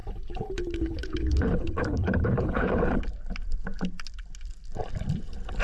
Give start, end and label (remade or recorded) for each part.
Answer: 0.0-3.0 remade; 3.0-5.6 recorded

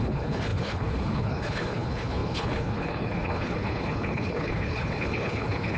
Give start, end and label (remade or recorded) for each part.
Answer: 0.0-5.8 remade

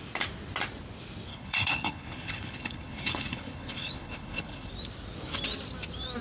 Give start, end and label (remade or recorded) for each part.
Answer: 0.0-1.3 recorded; 1.3-4.7 remade; 4.7-6.2 recorded

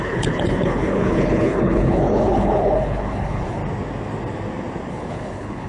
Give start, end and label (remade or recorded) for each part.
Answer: 0.0-3.6 remade; 3.6-4.9 recorded; 4.9-5.7 remade

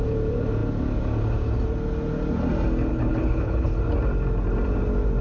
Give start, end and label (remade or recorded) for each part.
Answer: 0.0-2.9 recorded; 2.9-3.8 remade; 3.8-5.2 recorded

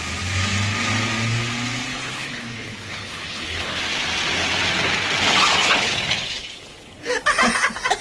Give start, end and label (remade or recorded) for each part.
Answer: 0.0-1.9 recorded; 1.9-3.8 remade; 3.8-5.6 recorded; 5.6-7.1 remade; 7.1-8.0 recorded